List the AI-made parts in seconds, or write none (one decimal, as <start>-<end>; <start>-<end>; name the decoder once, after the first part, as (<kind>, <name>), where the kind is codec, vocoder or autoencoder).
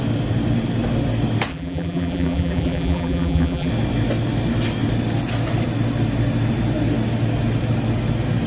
1.5-3.7 (vocoder, BigVGAN v2)